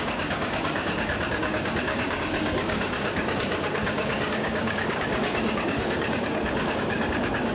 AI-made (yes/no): yes